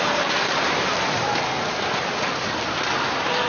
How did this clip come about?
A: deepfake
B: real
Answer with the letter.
B